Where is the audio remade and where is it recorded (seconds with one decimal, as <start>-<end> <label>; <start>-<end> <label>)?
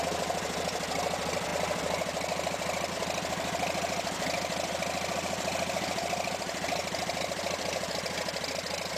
0.0-6.8 recorded; 6.8-8.5 remade; 8.5-9.0 recorded